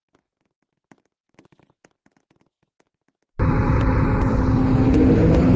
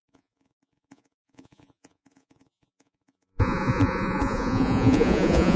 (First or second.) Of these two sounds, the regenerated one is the second